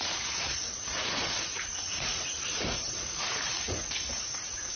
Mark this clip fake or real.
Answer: fake